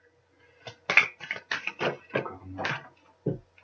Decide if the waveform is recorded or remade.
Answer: recorded